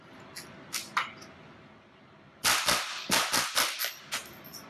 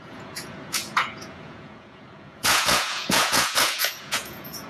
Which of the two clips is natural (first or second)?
first